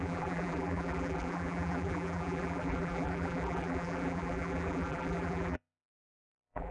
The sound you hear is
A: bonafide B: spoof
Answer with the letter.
B